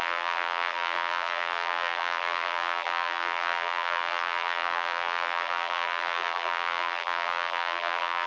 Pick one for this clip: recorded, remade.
remade